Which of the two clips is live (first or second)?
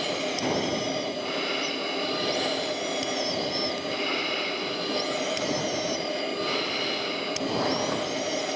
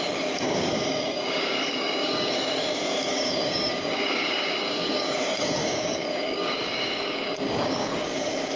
first